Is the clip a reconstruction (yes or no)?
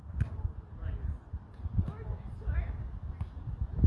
no